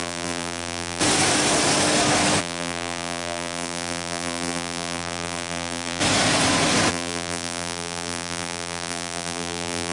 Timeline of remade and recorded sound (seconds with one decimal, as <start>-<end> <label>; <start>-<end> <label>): 0.0-1.0 remade; 1.0-2.4 recorded; 2.4-6.0 remade; 6.0-6.9 recorded; 6.9-9.9 remade